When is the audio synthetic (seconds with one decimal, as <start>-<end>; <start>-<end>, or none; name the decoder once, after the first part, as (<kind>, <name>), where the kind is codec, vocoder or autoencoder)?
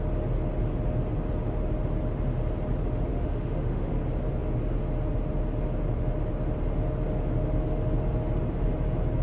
3.1-3.9 (autoencoder, DAC-VAE)